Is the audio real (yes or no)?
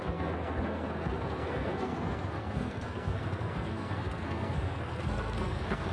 no